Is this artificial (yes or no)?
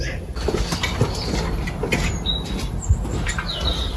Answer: no